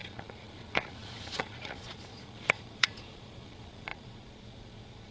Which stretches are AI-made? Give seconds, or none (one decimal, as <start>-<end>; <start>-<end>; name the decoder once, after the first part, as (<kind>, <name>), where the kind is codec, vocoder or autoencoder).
0.0-5.1 (vocoder, Vocos)